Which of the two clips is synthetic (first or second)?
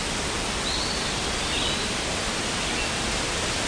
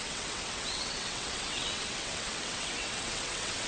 second